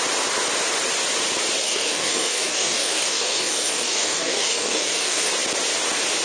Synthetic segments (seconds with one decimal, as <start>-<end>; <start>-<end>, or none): 1.6-5.3